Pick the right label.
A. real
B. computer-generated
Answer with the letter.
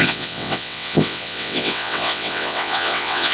B